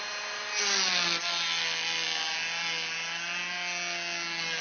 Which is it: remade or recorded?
recorded